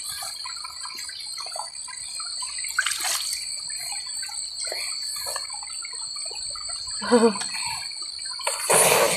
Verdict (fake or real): real